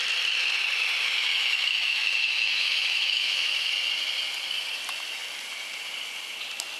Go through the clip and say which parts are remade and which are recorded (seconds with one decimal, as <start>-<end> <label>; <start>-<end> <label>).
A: 0.0-1.0 recorded; 1.0-3.7 remade; 3.7-6.8 recorded